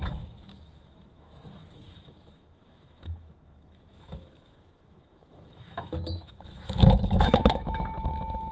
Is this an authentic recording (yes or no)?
no